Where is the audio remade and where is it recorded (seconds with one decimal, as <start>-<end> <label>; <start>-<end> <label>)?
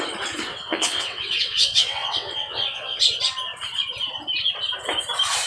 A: 0.0-0.5 recorded; 0.5-3.0 remade; 3.0-5.5 recorded